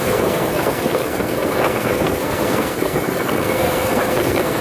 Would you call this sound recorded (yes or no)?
no